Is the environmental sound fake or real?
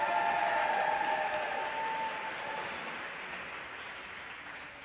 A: real